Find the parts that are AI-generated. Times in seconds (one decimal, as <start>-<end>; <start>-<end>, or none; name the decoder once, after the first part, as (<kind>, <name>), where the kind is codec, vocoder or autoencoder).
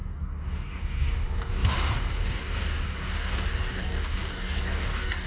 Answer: 0.0-5.3 (codec, DAC)